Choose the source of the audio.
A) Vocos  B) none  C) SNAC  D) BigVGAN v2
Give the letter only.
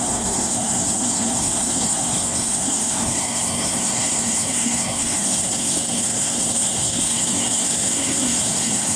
C